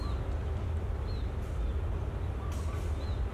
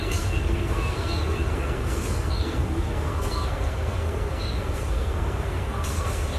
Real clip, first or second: first